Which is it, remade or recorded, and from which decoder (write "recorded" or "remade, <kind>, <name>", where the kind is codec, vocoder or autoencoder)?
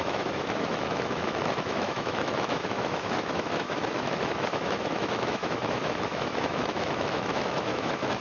remade, autoencoder, DAC-VAE